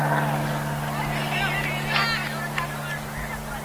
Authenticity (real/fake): real